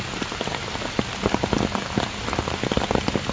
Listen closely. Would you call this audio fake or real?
real